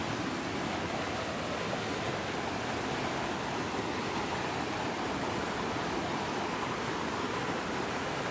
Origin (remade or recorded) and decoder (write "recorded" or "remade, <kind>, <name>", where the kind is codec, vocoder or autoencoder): recorded